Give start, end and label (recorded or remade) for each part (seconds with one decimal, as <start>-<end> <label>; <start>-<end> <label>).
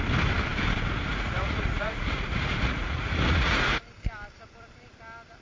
0.0-1.1 recorded; 1.1-3.8 remade; 3.8-5.4 recorded